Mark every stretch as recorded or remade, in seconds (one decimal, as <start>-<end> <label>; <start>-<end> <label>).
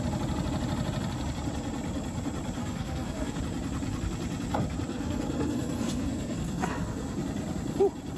0.0-2.6 recorded; 2.6-3.4 remade; 3.4-4.9 recorded; 4.9-7.2 remade; 7.2-8.2 recorded